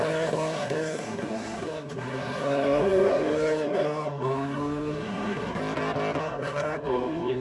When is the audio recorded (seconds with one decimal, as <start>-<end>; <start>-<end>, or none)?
5.6-6.2

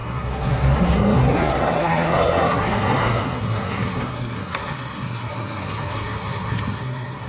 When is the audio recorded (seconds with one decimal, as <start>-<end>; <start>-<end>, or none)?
none

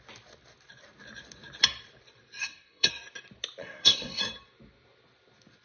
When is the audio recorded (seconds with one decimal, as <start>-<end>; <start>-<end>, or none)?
0.0-2.4; 2.9-3.6; 4.2-5.6

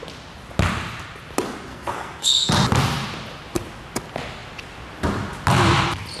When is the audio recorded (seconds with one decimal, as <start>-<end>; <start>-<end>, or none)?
0.0-1.7; 2.5-6.2

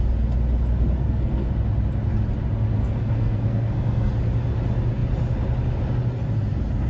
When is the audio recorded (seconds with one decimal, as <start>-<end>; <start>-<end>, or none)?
0.0-1.0; 1.5-2.8; 4.1-6.9

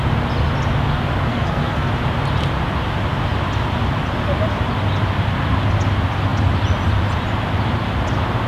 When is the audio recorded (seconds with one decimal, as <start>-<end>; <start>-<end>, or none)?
0.0-1.3; 1.9-8.5